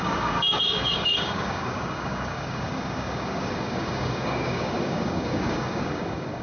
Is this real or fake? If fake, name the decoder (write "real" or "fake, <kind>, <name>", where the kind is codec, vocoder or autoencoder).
fake, codec, DAC